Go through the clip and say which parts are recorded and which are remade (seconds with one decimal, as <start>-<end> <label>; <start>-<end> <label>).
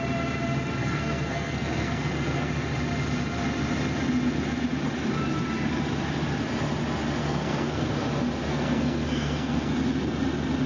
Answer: 0.0-0.8 recorded; 0.8-2.5 remade; 2.5-7.2 recorded; 7.2-7.9 remade; 7.9-8.5 recorded; 8.5-9.7 remade; 9.7-10.7 recorded